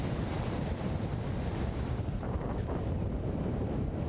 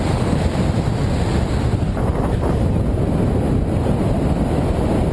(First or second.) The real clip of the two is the second